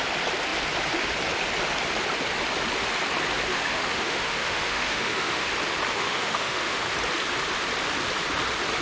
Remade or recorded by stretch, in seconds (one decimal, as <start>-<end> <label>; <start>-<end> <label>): 0.0-3.5 recorded; 3.5-5.5 remade; 5.5-5.9 recorded; 5.9-6.8 remade; 6.8-8.8 recorded